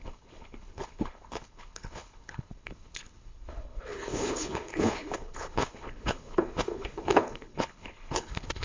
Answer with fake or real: fake